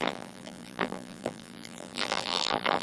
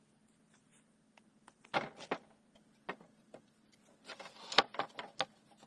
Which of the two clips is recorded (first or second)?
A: second